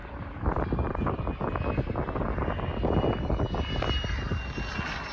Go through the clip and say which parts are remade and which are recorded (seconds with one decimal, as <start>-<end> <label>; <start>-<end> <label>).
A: 0.0-0.6 remade; 0.6-5.1 recorded